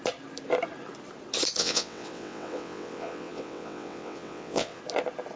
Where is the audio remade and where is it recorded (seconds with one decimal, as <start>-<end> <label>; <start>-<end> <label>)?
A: 0.0-1.6 recorded; 1.6-4.8 remade; 4.8-5.4 recorded

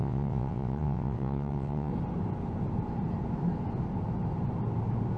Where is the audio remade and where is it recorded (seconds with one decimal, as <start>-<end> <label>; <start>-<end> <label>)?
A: 0.0-1.9 remade; 1.9-5.2 recorded

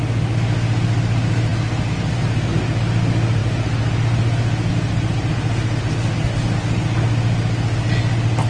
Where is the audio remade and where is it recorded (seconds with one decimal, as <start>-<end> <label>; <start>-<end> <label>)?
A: 0.0-8.5 recorded

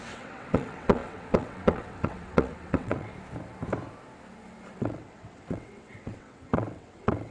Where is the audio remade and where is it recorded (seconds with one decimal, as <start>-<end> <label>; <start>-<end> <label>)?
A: 0.0-3.1 remade; 3.1-4.7 recorded; 4.7-7.3 remade